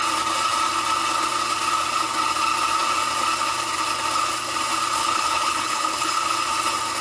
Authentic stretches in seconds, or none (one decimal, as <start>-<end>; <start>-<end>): 0.0-5.0; 6.3-7.0